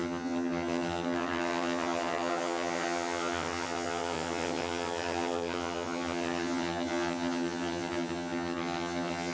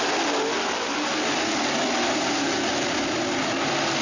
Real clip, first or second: second